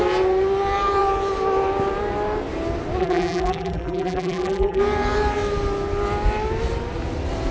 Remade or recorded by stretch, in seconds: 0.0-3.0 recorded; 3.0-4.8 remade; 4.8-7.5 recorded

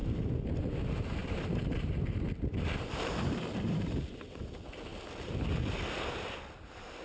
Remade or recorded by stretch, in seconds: 0.0-1.2 recorded; 1.2-1.9 remade; 1.9-2.5 recorded; 2.5-4.4 remade; 4.4-7.0 recorded

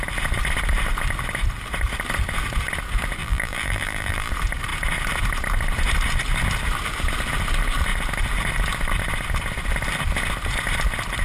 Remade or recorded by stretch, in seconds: 0.0-3.2 recorded; 3.2-4.3 remade; 4.3-11.2 recorded

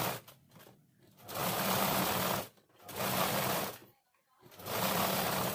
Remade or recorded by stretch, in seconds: 0.0-3.8 recorded; 3.8-4.8 remade; 4.8-5.5 recorded

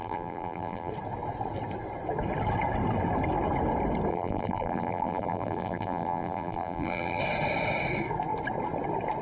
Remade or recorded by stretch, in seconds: 0.0-0.9 remade; 0.9-4.1 recorded; 4.1-7.2 remade; 7.2-9.2 recorded

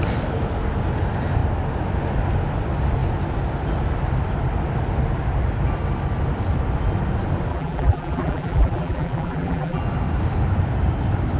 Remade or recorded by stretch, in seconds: 0.0-7.5 recorded; 7.5-9.8 remade; 9.8-11.4 recorded

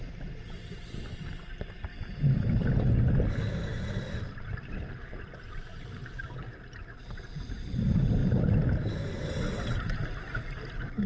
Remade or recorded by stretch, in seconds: 0.0-3.7 recorded; 3.7-5.2 remade; 5.2-5.7 recorded; 5.7-6.2 remade; 6.2-8.2 recorded; 8.2-8.7 remade; 8.7-11.1 recorded